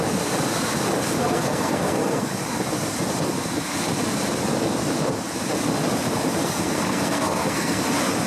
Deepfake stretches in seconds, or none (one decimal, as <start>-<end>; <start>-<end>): 1.2-2.3; 6.4-7.8